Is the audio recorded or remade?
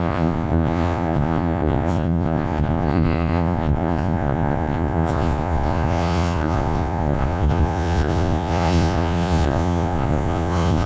remade